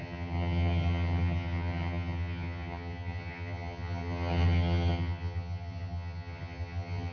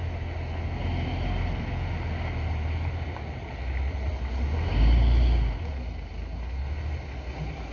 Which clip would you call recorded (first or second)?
second